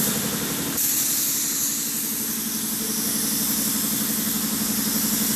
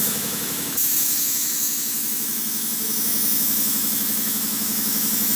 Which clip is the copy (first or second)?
second